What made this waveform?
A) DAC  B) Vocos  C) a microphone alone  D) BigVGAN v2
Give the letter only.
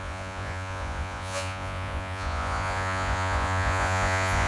B